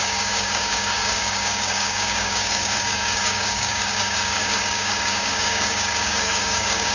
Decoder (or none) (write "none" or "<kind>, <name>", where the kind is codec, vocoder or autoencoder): codec, DAC